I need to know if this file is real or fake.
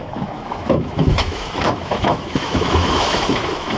fake